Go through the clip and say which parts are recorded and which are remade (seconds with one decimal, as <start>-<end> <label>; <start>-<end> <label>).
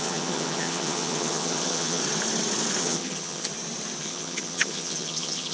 0.0-2.0 remade; 2.0-2.8 recorded; 2.8-3.5 remade; 3.5-4.0 recorded; 4.0-5.5 remade